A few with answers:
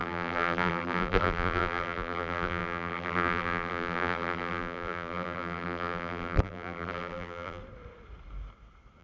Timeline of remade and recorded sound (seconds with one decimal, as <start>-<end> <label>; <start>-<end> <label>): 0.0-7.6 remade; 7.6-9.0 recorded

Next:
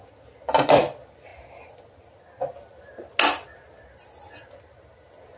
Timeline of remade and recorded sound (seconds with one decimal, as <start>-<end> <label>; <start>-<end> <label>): 0.0-5.4 recorded

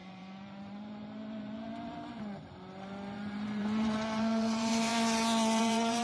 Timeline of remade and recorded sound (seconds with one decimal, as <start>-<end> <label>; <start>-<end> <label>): 0.0-4.9 remade; 4.9-5.6 recorded; 5.6-6.0 remade

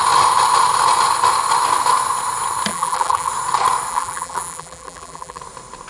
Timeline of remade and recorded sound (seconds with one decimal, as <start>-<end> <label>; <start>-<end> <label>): 0.0-2.7 recorded; 2.7-3.3 remade; 3.3-3.9 recorded; 3.9-5.4 remade; 5.4-5.9 recorded